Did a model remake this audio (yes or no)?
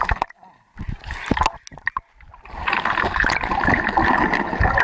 no